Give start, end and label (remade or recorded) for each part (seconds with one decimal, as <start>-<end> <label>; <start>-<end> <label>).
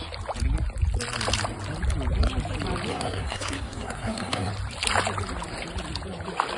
0.0-2.9 recorded; 2.9-4.5 remade; 4.5-6.6 recorded